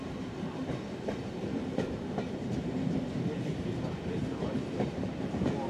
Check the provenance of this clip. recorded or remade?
remade